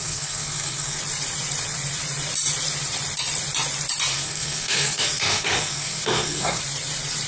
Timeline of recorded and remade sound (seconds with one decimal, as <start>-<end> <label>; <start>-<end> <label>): 0.0-1.0 remade; 1.0-4.1 recorded; 4.1-6.6 remade; 6.6-7.3 recorded